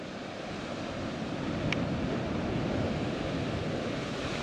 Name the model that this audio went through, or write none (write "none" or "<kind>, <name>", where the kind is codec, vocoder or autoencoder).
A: none